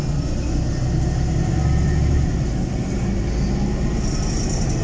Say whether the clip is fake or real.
real